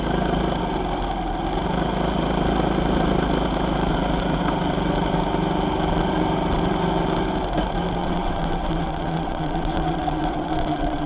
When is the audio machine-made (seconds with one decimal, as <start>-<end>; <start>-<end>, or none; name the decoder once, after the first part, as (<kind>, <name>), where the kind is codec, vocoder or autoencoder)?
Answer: 8.0-11.1 (vocoder, WaveNeXt)